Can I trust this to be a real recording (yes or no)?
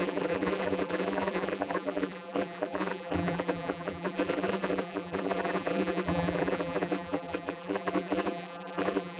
no